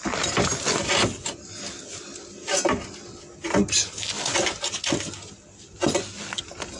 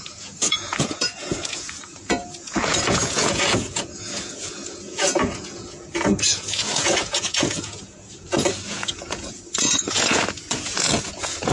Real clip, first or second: first